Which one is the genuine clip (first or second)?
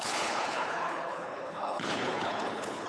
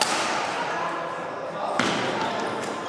second